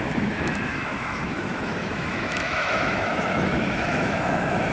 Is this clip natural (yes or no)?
no